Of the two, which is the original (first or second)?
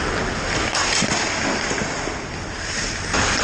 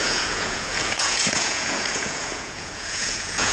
first